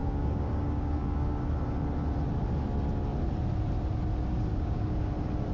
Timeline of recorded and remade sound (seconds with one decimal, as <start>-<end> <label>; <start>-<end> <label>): 0.0-1.5 remade; 1.5-4.5 recorded; 4.5-5.1 remade; 5.1-5.5 recorded